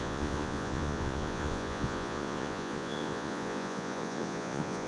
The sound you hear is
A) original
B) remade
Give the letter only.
B